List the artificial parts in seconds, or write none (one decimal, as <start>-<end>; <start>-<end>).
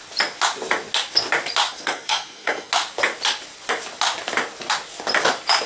1.7-2.7